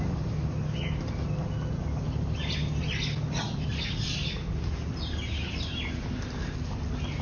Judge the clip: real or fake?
real